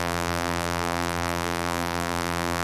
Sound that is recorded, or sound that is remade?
remade